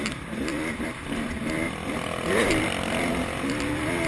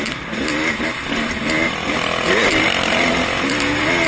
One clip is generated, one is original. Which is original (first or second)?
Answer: second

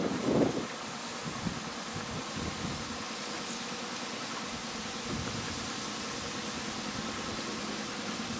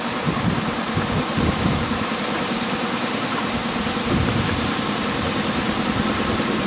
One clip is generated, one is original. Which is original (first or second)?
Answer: first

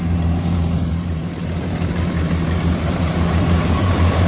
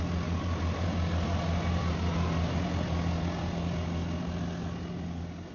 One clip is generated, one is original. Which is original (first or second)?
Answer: second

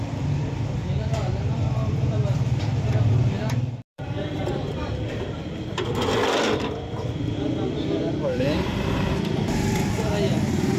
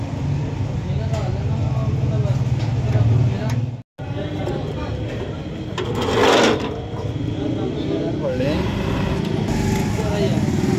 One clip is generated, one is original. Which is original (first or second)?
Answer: second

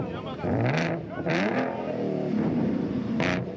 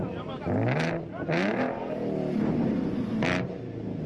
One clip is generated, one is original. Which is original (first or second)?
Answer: second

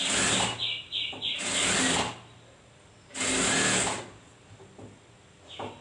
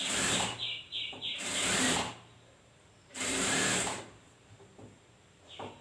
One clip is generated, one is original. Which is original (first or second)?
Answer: first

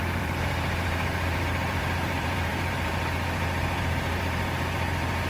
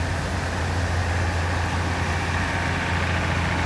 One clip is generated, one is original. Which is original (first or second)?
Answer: second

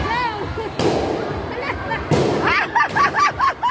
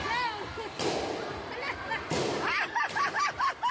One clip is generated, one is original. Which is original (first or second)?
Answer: first